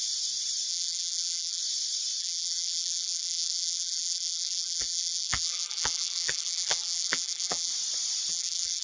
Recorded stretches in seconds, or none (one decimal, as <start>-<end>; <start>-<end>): 0.0-0.7; 1.6-2.2; 7.7-8.3

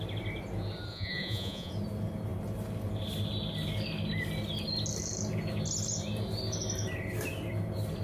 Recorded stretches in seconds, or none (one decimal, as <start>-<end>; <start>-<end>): 0.0-0.9; 1.7-8.0

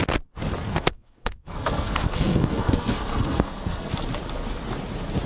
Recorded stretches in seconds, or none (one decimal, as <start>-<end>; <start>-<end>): 0.0-0.7; 3.9-5.3